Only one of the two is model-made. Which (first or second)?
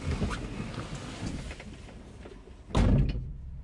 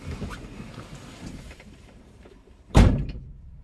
second